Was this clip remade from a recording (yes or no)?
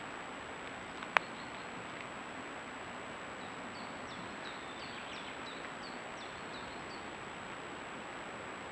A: no